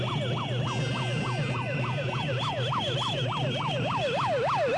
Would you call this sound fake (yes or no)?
no